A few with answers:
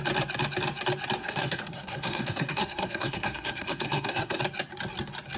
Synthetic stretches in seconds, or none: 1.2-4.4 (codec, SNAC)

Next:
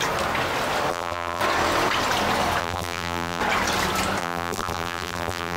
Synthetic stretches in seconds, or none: 0.9-1.4 (vocoder, BigVGAN v2); 2.6-3.4; 4.2-5.6

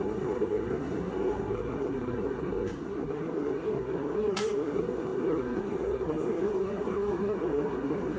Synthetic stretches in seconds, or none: 0.0-8.2 (codec, SNAC)

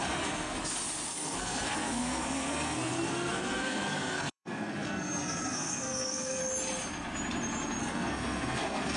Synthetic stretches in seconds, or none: 0.0-0.6 (codec, SNAC); 1.1-6.4; 7.8-9.0

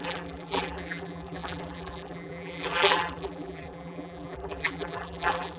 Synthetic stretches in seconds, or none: 0.0-5.6 (vocoder, BigVGAN v2)

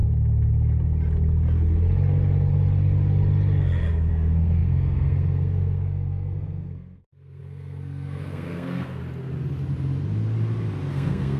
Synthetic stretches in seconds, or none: 4.1-9.0 (codec, SNAC); 10.9-11.4

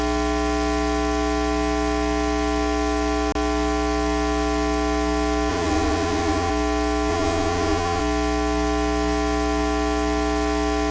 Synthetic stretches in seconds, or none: 5.5-6.5 (vocoder, Vocos); 7.1-8.0

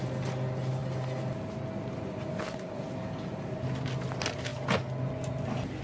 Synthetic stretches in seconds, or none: none